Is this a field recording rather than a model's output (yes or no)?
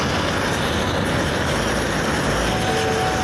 yes